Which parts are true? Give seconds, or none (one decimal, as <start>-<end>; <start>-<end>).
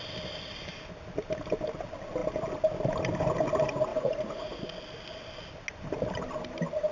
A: 0.0-3.9; 4.7-6.9